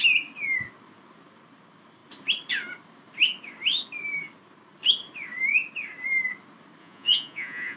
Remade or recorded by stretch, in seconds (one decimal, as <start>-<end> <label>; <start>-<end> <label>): 0.0-6.8 recorded; 6.8-7.8 remade